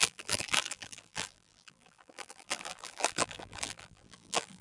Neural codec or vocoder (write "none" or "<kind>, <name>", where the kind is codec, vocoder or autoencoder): vocoder, BigVGAN v2